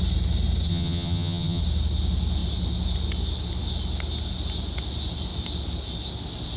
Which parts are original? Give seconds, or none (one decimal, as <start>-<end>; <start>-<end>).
0.0-0.7; 1.6-6.6